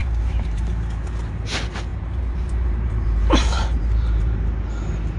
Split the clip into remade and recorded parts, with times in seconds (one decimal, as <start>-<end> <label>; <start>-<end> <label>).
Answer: 0.0-0.7 remade; 0.7-1.9 recorded; 1.9-4.4 remade; 4.4-5.2 recorded